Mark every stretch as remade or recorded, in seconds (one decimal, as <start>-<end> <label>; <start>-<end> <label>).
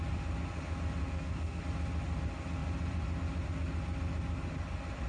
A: 0.0-1.0 recorded; 1.0-1.6 remade; 1.6-5.1 recorded